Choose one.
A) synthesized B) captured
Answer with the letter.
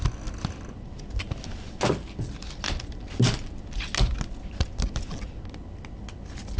B